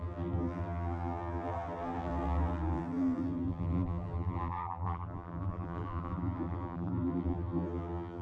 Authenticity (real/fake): fake